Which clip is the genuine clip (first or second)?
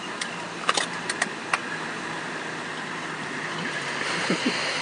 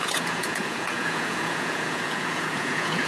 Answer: first